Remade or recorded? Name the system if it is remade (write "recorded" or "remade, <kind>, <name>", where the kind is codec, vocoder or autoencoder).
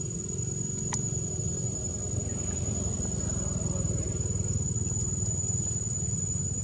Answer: recorded